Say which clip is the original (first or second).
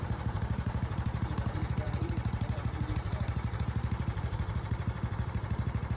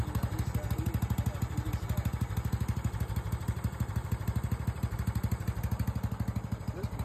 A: second